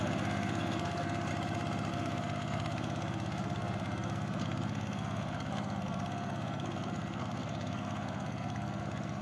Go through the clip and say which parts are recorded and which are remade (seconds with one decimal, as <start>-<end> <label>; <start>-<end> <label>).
0.0-1.3 remade; 1.3-1.9 recorded; 1.9-9.2 remade